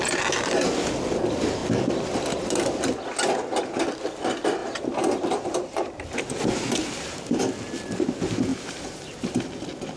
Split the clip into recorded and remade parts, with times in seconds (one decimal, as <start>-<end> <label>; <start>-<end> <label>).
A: 0.0-4.6 recorded; 4.6-7.4 remade; 7.4-8.5 recorded; 8.5-9.3 remade; 9.3-10.0 recorded